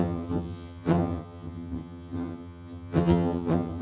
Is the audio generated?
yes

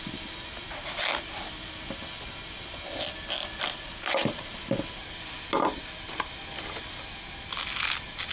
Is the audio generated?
no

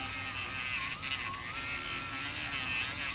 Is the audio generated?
no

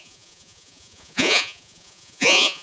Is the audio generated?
yes